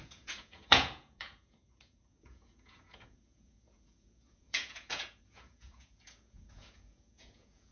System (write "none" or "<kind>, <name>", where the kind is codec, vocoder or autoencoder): vocoder, Vocos